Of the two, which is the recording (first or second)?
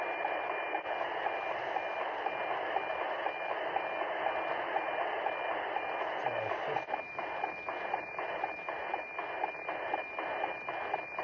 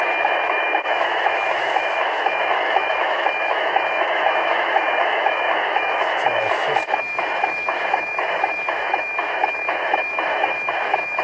first